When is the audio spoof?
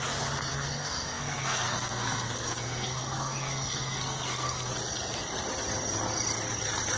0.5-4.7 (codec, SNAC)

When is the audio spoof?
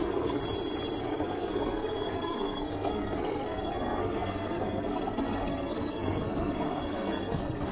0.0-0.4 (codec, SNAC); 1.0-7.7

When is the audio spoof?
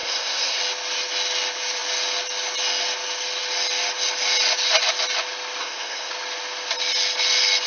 0.0-0.6 (codec, SNAC); 5.6-6.1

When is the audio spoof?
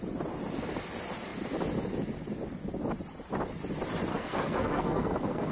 4.1-5.5 (codec, SNAC)